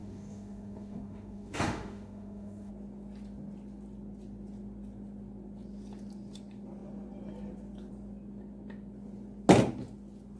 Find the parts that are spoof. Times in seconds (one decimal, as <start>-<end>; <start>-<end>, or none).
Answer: 0.0-2.7